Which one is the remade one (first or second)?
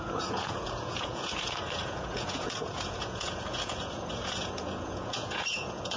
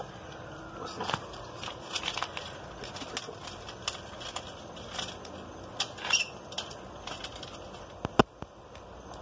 first